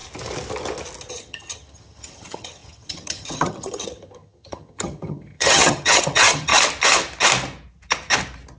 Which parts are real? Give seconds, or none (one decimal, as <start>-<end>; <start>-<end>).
0.0-1.1; 6.5-8.6